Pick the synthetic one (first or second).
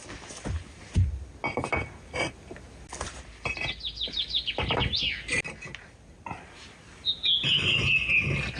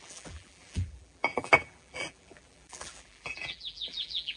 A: second